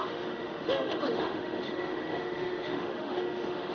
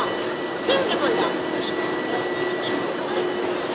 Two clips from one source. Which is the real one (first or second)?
second